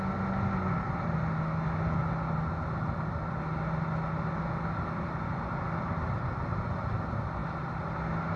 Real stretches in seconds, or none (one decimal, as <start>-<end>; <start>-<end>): 0.0-8.4